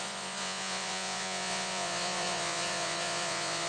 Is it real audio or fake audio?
fake